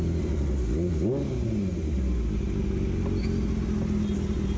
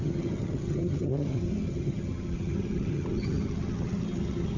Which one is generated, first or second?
second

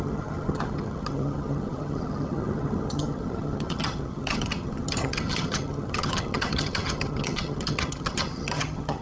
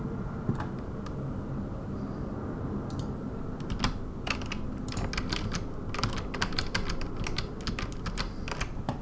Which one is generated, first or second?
first